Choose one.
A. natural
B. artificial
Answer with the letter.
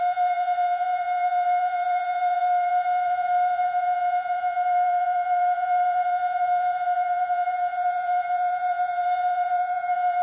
B